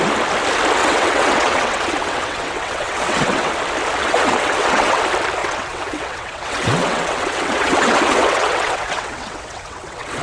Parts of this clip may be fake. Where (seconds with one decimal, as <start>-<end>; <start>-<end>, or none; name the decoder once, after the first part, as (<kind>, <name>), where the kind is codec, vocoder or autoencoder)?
0.8-3.5 (vocoder, WaveNeXt); 4.0-5.0; 5.4-10.2